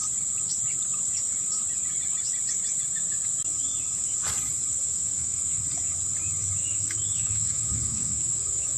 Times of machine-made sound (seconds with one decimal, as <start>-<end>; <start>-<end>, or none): 4.7-5.6; 6.6-8.8